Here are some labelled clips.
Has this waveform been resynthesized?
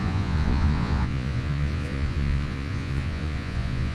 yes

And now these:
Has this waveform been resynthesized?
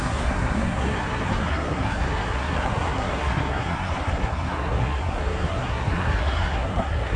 yes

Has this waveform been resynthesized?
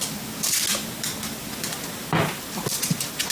no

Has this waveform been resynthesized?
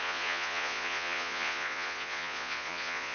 yes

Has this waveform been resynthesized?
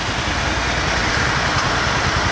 no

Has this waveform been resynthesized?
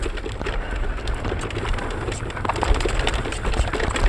no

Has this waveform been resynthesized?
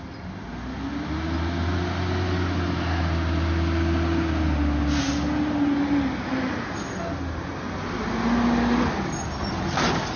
no